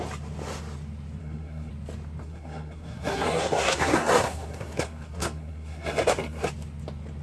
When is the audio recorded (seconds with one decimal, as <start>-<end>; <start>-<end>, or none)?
0.0-1.2; 1.7-2.2; 6.5-7.2